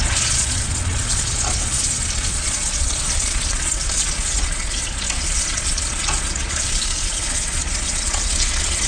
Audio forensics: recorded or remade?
remade